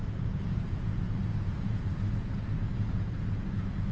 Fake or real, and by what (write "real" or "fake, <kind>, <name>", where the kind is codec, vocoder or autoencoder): fake, vocoder, Vocos